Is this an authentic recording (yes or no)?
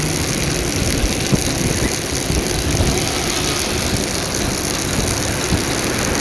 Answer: yes